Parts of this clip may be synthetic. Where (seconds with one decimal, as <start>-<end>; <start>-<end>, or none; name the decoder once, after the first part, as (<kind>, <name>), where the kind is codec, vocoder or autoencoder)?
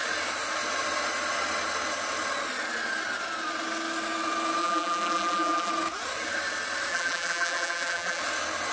4.6-5.7 (vocoder, BigVGAN v2); 6.9-8.2